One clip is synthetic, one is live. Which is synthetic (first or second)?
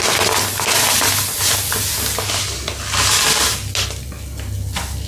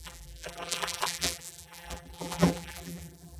second